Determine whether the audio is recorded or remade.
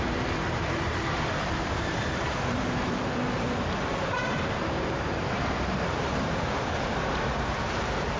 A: remade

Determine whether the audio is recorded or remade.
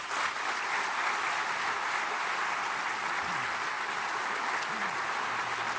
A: recorded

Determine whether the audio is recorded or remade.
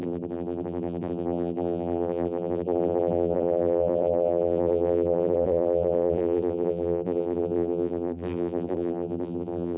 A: remade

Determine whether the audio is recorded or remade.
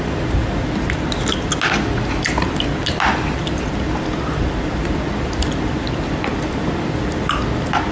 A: recorded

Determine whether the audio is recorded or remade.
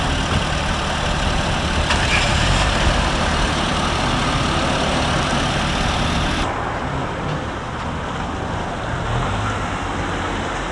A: recorded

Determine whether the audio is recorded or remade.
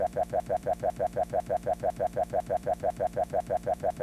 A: remade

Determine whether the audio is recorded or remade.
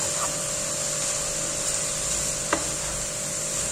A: recorded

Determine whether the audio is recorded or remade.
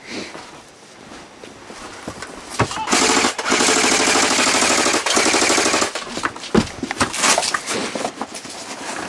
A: recorded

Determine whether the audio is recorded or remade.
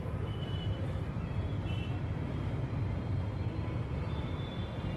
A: remade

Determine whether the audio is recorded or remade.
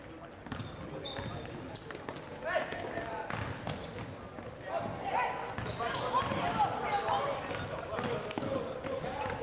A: recorded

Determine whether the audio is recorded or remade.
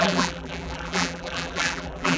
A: remade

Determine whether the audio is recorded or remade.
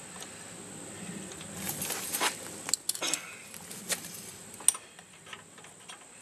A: recorded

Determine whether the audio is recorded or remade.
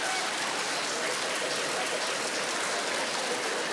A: recorded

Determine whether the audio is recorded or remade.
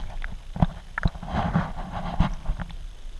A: recorded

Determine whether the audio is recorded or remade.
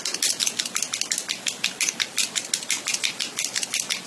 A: recorded